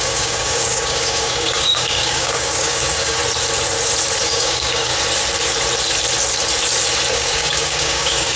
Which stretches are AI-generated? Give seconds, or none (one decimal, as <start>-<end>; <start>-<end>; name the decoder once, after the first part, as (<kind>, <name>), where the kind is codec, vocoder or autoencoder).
0.0-3.2 (codec, DAC); 4.3-4.9; 7.1-8.4